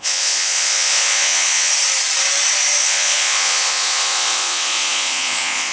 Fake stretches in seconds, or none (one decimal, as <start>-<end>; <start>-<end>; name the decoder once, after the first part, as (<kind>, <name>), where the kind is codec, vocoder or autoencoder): 0.0-1.7 (vocoder, Vocos); 2.8-5.7